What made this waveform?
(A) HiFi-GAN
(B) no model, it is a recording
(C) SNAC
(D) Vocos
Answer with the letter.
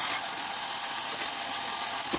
B